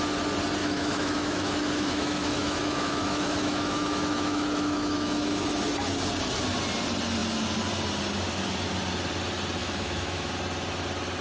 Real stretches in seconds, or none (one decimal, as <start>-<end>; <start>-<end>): 0.0-0.6; 5.5-9.6; 10.3-11.2